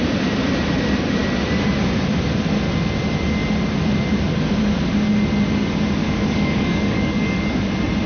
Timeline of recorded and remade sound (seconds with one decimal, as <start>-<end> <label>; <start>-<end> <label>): 0.0-6.0 recorded; 6.0-7.6 remade; 7.6-8.1 recorded